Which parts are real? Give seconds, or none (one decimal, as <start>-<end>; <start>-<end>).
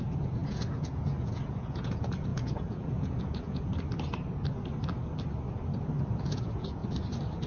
3.7-6.3; 6.8-7.5